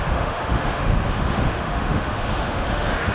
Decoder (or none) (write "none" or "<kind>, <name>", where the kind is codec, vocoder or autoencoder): autoencoder, DAC-VAE